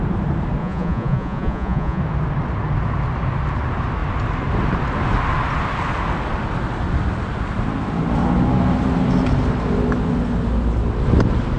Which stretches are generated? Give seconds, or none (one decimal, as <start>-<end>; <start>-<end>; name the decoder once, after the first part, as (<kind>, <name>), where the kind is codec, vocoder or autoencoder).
0.6-2.0 (vocoder, Vocos)